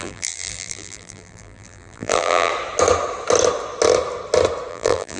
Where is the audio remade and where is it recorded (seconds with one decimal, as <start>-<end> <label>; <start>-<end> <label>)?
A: 0.0-2.5 remade; 2.5-4.7 recorded; 4.7-5.2 remade